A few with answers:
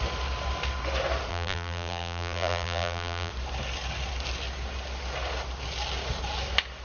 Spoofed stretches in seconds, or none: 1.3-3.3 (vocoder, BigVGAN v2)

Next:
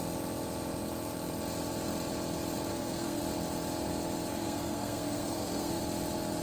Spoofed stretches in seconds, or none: 2.7-3.2 (codec, SNAC); 4.3-5.8

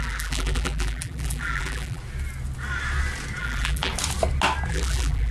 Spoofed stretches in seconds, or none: 0.0-2.0 (vocoder, BigVGAN v2); 3.4-3.9; 4.7-5.3

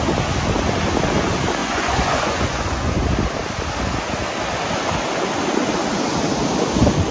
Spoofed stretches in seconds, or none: 1.6-3.0 (vocoder, Vocos)

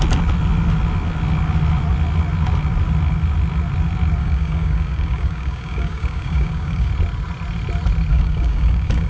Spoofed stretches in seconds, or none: 4.2-6.9 (codec, DAC); 8.1-9.1

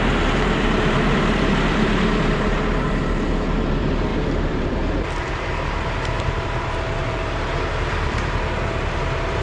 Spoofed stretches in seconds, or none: 0.0-9.4 (vocoder, BigVGAN v2)